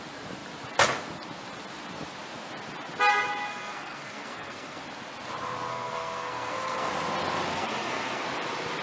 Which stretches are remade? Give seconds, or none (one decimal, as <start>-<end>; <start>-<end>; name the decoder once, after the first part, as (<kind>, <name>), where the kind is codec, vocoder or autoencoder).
3.5-4.8 (codec, SNAC); 5.7-6.9; 7.5-8.2